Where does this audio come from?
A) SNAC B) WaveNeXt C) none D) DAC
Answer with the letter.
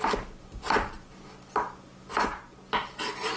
C